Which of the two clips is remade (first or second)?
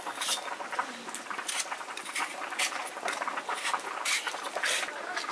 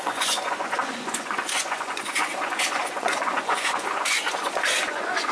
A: second